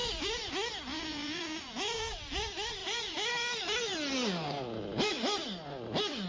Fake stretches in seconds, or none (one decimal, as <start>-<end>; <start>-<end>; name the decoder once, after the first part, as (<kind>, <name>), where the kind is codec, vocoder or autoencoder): 0.0-0.5 (vocoder, Vocos); 0.9-2.4; 2.8-3.3